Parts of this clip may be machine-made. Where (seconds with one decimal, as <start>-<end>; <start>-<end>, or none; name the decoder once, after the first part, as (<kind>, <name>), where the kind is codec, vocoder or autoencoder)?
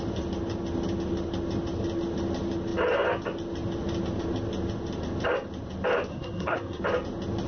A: 6.1-6.8 (codec, SNAC)